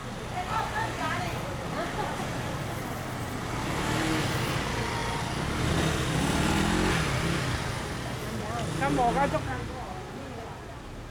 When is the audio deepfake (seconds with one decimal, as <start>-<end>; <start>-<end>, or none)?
none